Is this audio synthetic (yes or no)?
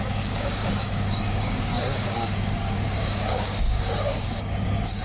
yes